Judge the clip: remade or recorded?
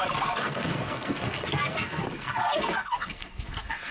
remade